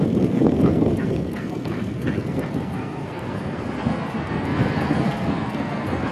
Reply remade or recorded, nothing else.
remade